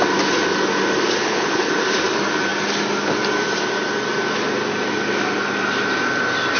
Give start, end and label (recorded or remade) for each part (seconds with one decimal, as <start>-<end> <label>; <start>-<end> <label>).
0.0-1.2 recorded; 1.2-1.7 remade; 1.7-6.6 recorded